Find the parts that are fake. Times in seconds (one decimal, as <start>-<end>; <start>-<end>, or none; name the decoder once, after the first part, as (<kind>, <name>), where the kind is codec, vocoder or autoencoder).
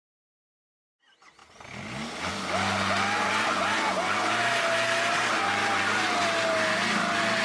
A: none